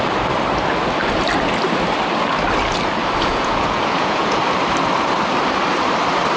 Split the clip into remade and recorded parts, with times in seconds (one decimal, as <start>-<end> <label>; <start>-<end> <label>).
0.0-3.3 recorded; 3.3-4.4 remade; 4.4-6.4 recorded